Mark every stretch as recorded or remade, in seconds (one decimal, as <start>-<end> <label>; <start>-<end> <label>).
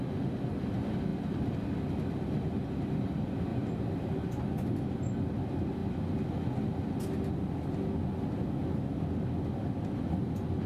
0.0-3.5 recorded; 3.5-4.1 remade; 4.1-10.7 recorded